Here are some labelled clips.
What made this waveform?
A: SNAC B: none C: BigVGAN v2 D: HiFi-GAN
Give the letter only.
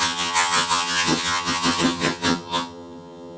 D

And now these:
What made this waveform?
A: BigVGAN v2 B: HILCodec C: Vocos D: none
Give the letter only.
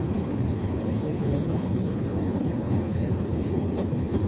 B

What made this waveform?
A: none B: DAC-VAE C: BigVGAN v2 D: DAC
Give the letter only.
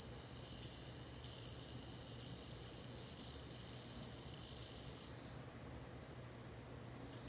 A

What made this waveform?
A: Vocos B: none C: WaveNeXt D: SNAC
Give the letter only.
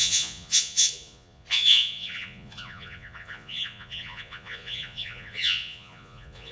A